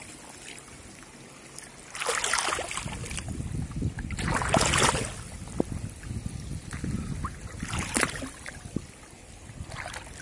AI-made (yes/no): no